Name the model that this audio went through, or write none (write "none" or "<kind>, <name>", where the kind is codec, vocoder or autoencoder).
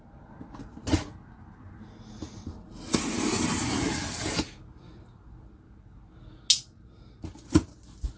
none